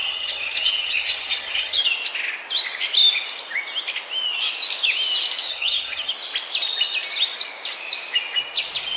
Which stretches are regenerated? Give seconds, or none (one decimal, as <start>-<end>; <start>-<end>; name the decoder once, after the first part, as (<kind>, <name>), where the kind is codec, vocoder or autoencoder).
0.0-1.8 (vocoder, HiFi-GAN); 5.5-6.1